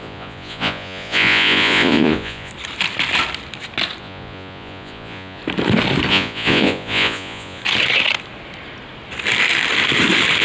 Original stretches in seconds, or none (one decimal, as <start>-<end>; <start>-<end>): 2.5-4.0; 5.4-6.1; 7.6-10.4